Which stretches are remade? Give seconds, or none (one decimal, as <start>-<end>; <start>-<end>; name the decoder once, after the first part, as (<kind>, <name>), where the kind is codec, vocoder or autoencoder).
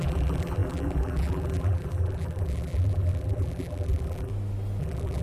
0.0-4.3 (vocoder, BigVGAN v2); 4.8-5.2